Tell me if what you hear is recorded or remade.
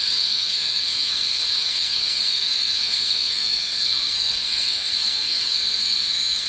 remade